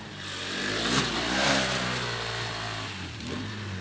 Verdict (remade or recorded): recorded